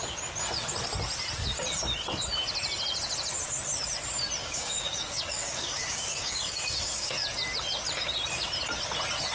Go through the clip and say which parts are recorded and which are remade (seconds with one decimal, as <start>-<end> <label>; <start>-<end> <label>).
0.0-4.4 recorded; 4.4-7.1 remade; 7.1-9.3 recorded